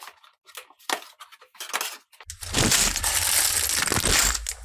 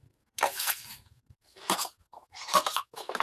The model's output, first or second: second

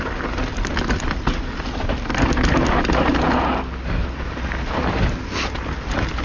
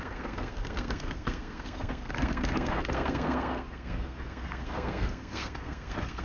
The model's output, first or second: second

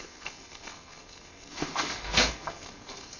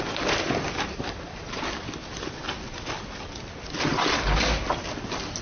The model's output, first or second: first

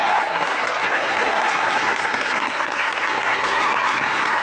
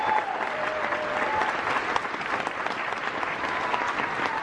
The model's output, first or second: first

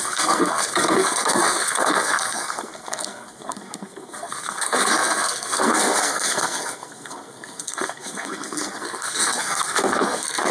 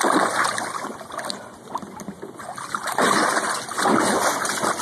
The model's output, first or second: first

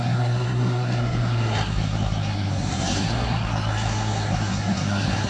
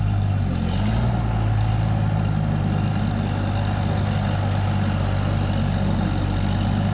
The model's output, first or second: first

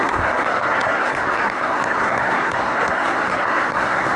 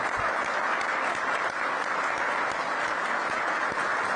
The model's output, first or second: first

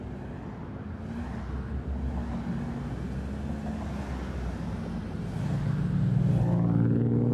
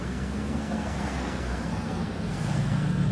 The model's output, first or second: second